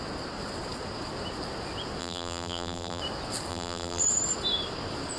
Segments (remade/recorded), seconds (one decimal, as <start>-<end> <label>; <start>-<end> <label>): 0.0-2.0 recorded; 2.0-3.0 remade; 3.0-3.5 recorded; 3.5-4.0 remade; 4.0-5.2 recorded